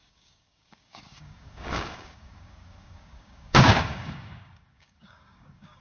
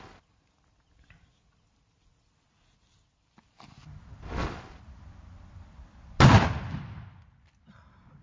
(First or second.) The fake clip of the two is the first